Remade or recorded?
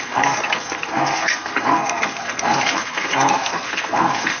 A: remade